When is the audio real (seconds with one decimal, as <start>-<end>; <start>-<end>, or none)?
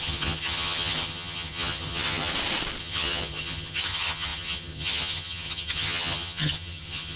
2.3-2.8